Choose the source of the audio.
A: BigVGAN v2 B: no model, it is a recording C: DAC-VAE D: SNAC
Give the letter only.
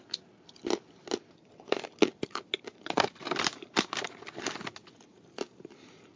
B